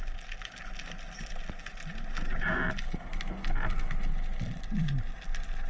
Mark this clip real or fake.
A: real